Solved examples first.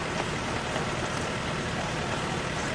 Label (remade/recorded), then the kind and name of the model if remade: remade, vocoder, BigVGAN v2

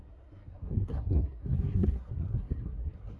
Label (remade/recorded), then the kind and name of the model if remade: remade, codec, SNAC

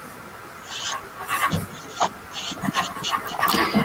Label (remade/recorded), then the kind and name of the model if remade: recorded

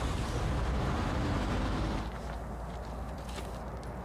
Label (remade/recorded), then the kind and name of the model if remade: recorded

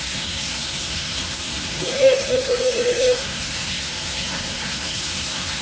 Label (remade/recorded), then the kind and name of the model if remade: remade, codec, SNAC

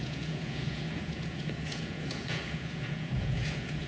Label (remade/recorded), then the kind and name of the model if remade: remade, vocoder, Vocos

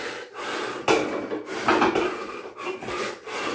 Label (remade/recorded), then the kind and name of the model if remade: recorded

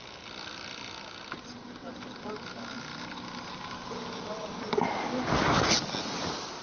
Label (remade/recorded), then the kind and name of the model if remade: recorded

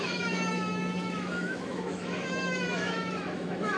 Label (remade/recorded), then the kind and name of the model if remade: remade, autoencoder, DAC-VAE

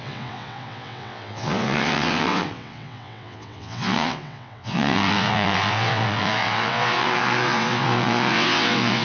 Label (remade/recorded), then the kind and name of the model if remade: remade, vocoder, WaveNeXt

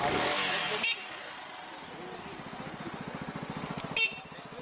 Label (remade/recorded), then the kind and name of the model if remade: recorded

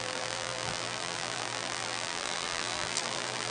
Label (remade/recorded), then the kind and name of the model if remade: remade, vocoder, BigVGAN v2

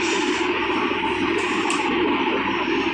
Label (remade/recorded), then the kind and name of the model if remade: recorded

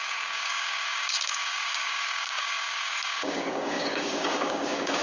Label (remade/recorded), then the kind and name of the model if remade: remade, codec, DAC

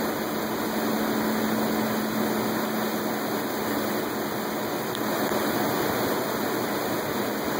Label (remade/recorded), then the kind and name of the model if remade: recorded